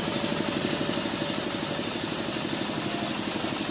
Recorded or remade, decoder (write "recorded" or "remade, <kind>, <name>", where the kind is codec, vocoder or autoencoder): recorded